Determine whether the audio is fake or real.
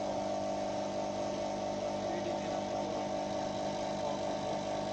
real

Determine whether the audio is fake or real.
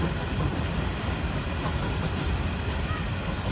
real